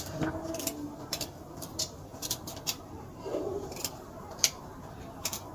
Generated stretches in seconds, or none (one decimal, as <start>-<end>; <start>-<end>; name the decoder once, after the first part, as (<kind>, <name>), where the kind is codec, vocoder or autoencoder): 0.0-5.5 (vocoder, BigVGAN v2)